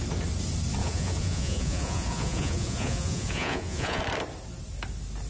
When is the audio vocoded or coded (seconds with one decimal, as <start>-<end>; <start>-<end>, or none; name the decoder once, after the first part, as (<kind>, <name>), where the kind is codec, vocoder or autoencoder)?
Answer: 0.8-4.0 (vocoder, Vocos)